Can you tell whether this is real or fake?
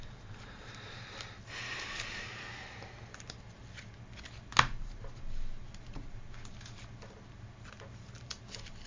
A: real